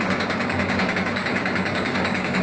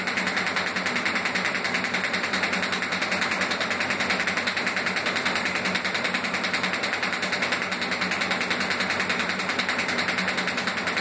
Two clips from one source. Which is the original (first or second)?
second